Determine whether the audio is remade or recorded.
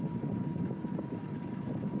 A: recorded